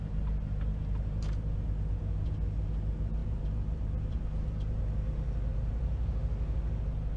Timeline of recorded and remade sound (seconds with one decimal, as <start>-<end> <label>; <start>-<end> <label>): 0.0-3.2 recorded; 3.2-4.8 remade; 4.8-5.5 recorded; 5.5-6.1 remade; 6.1-7.2 recorded